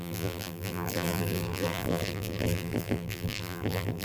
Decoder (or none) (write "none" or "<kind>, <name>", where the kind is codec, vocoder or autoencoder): vocoder, BigVGAN v2